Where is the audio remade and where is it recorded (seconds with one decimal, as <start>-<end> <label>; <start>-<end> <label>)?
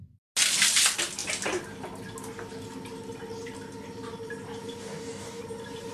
0.0-4.8 recorded; 4.8-5.4 remade; 5.4-5.9 recorded